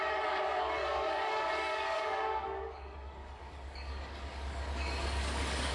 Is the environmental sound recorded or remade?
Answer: remade